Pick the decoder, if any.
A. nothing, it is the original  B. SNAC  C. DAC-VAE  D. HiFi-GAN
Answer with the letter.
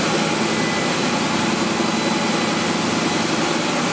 A